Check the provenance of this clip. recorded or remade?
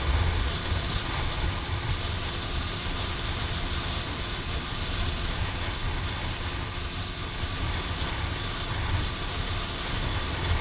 recorded